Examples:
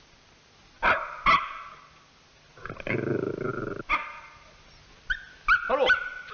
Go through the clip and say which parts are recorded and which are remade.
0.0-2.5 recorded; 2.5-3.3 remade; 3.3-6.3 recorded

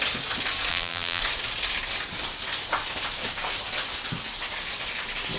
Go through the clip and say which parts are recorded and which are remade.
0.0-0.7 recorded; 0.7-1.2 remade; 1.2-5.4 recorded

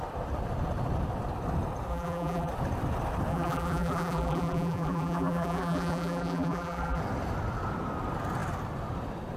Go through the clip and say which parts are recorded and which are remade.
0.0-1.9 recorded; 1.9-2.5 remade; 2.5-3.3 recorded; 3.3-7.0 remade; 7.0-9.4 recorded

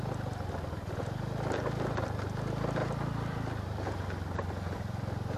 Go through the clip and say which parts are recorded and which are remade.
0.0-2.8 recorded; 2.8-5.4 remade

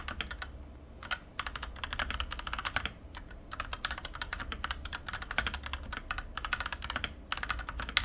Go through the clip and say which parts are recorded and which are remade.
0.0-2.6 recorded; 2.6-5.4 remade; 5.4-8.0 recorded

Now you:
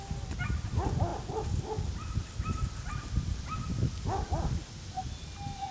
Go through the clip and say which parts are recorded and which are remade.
0.0-5.7 recorded